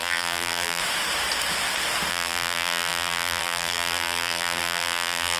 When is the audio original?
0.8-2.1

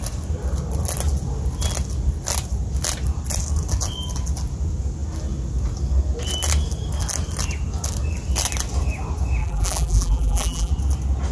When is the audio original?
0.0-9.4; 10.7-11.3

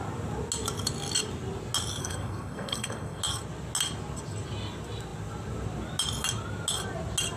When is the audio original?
0.0-2.0; 3.2-7.4

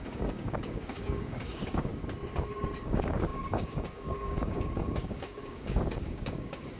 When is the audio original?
1.9-2.8

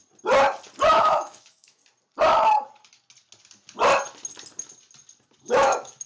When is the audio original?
0.0-0.9; 1.8-5.5

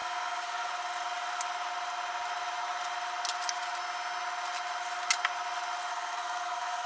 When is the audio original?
0.7-5.9

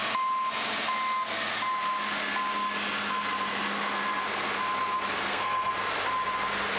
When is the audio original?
0.0-5.2; 5.7-6.8